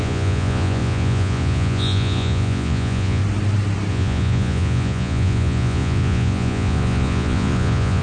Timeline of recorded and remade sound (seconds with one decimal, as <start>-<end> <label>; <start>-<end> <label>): 0.0-3.2 remade; 3.2-3.9 recorded; 3.9-8.0 remade